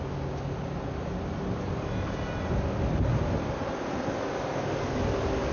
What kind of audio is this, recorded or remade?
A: recorded